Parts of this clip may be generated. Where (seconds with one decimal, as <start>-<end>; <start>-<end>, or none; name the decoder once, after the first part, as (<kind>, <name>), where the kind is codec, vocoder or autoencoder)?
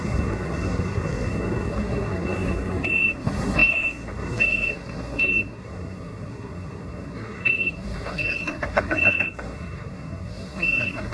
0.0-11.1 (codec, SNAC)